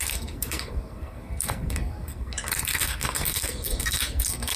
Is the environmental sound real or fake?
fake